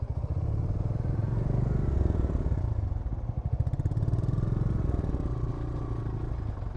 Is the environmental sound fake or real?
real